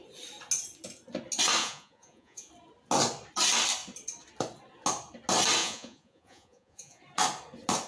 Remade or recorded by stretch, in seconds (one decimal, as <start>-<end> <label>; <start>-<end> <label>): 0.0-1.6 recorded; 1.6-2.5 remade; 2.5-5.6 recorded; 5.6-7.0 remade; 7.0-7.9 recorded